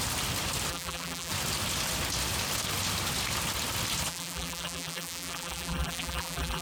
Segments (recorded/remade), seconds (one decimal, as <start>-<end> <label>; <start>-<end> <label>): 0.0-0.7 recorded; 0.7-1.3 remade; 1.3-4.1 recorded; 4.1-6.6 remade